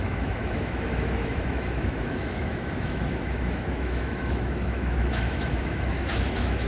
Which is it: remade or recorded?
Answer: remade